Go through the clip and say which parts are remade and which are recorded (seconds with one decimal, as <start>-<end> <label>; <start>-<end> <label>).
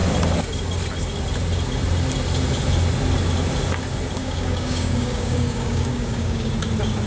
0.0-4.2 recorded; 4.2-6.5 remade; 6.5-7.1 recorded